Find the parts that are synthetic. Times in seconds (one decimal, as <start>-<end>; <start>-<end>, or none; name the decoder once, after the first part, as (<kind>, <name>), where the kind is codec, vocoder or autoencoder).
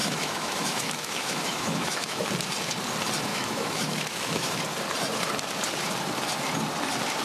0.0-2.3 (autoencoder, DAC-VAE); 3.3-4.6